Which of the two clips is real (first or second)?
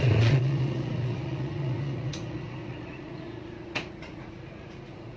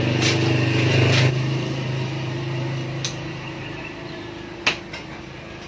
second